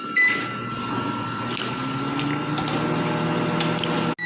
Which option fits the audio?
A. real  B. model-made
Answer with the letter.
A